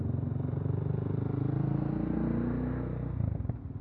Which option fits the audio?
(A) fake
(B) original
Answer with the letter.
B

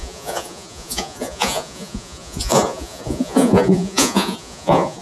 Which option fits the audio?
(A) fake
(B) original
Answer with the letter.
A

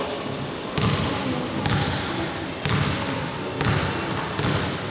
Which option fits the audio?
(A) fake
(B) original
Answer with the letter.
B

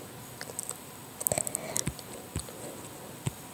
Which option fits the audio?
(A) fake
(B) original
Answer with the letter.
B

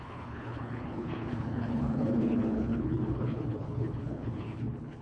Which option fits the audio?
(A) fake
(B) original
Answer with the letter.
A